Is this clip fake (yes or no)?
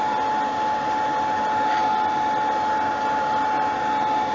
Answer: no